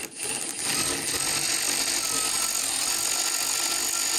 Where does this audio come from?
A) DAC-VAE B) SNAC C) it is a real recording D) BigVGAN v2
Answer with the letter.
C